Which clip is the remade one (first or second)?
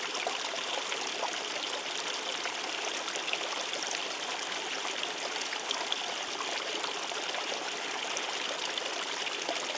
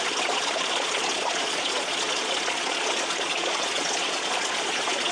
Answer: second